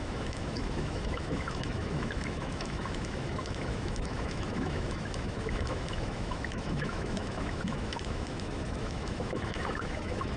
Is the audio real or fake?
fake